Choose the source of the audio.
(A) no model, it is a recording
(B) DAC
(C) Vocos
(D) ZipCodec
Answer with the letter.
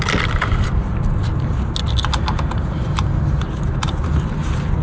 A